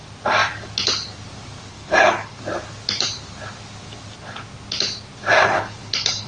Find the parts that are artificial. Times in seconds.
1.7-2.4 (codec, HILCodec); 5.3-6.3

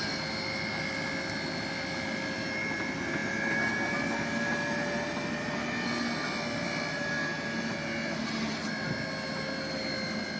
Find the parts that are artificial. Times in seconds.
none

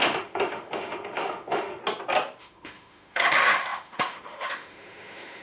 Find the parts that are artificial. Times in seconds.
0.0-1.8 (autoencoder, DAC-VAE); 2.4-5.4

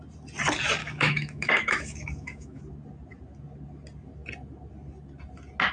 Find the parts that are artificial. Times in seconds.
0.8-2.6 (autoencoder, DAC-VAE)

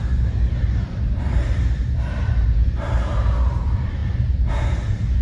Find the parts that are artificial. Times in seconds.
0.0-5.2 (vocoder, BigVGAN v2)